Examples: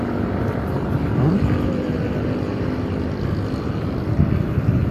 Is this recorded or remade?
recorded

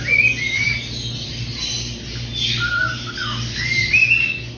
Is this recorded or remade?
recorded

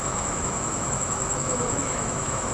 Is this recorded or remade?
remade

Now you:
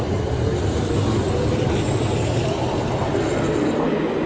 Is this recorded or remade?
recorded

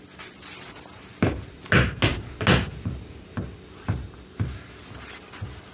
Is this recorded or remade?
recorded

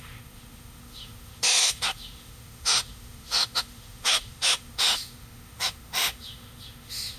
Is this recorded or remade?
remade